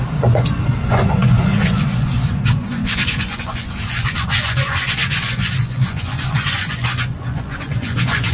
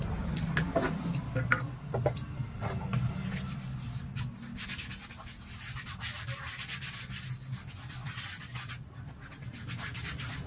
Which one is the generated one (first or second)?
first